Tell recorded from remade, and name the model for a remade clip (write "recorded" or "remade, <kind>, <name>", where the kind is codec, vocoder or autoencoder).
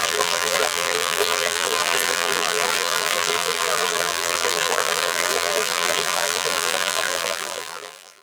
remade, vocoder, BigVGAN v2